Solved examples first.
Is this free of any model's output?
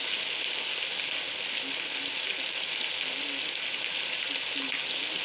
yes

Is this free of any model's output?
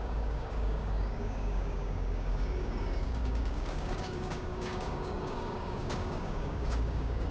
no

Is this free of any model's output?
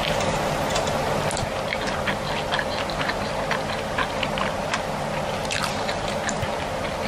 yes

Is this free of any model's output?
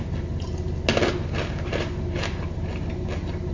yes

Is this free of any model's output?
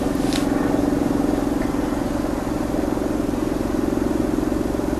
yes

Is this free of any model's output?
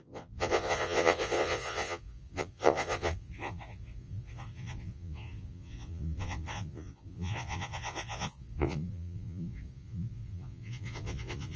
no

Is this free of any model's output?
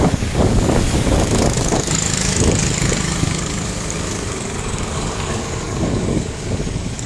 no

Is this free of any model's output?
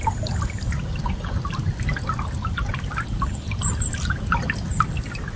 yes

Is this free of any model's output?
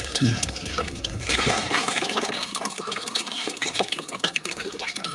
no